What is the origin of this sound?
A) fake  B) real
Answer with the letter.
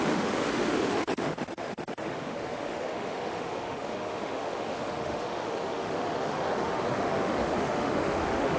A